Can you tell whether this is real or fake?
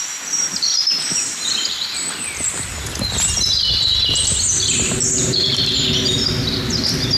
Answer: fake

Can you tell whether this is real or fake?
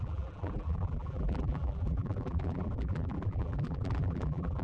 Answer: fake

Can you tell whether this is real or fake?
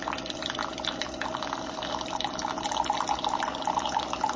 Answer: real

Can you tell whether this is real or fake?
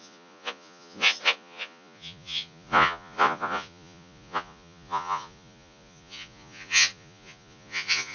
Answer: fake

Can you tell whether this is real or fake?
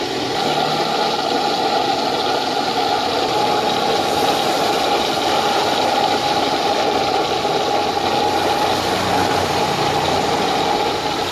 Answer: real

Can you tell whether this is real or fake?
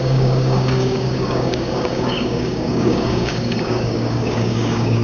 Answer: fake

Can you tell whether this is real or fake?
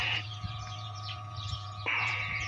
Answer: fake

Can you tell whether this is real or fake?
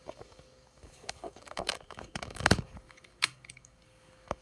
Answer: fake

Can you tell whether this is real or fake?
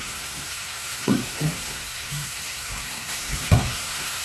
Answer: fake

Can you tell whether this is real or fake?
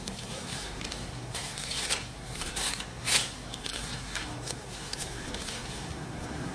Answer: fake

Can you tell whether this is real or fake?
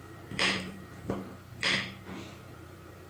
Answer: fake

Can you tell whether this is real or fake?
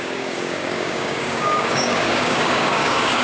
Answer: fake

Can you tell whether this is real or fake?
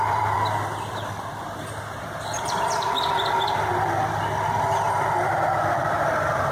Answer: fake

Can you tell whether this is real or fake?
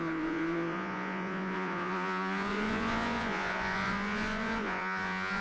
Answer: fake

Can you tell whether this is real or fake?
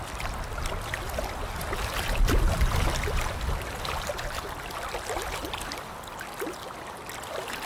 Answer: real